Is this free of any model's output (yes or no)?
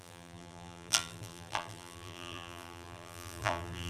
no